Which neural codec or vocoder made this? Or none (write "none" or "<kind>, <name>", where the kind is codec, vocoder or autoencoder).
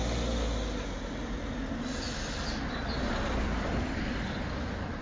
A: none